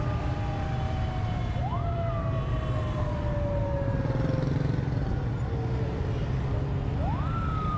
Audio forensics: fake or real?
real